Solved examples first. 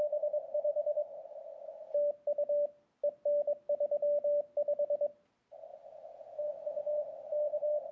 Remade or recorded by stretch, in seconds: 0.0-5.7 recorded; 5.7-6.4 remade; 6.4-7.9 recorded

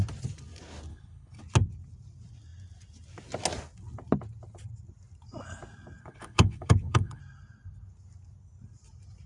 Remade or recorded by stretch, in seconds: 0.0-0.9 recorded; 0.9-1.4 remade; 1.4-6.0 recorded; 6.0-7.2 remade; 7.2-9.3 recorded

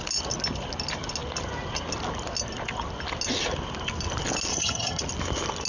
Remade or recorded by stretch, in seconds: 0.0-4.5 recorded; 4.5-5.0 remade; 5.0-5.7 recorded

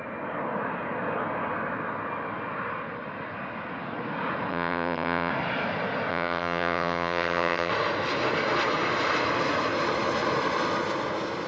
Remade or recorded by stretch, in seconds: 0.0-4.5 recorded; 4.5-5.3 remade; 5.3-6.1 recorded; 6.1-7.7 remade; 7.7-11.5 recorded

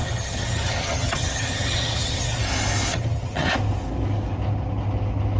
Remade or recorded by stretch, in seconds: 0.0-2.4 remade; 2.4-2.9 recorded; 2.9-3.5 remade; 3.5-5.4 recorded

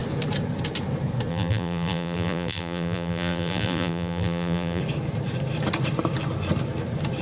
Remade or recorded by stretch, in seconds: 0.0-1.3 recorded; 1.3-4.8 remade; 4.8-7.2 recorded

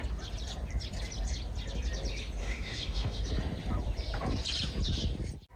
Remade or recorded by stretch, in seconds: 0.0-2.4 recorded; 2.4-3.2 remade; 3.2-5.6 recorded

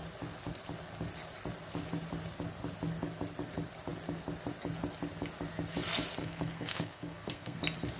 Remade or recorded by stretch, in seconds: 0.0-6.2 recorded; 6.2-7.6 remade; 7.6-8.0 recorded